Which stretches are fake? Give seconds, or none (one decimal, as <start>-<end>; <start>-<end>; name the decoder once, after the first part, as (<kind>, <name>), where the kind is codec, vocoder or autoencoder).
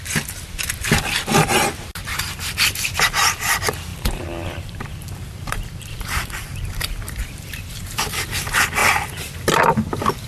3.9-8.1 (vocoder, BigVGAN v2)